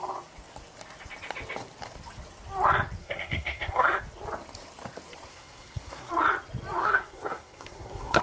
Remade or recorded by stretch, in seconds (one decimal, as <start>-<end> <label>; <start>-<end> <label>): 0.0-3.0 recorded; 3.0-4.0 remade; 4.0-5.3 recorded; 5.3-6.1 remade; 6.1-6.8 recorded; 6.8-8.2 remade